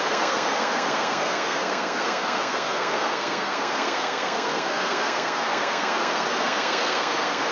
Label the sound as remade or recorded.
remade